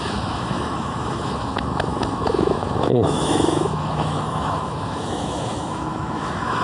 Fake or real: fake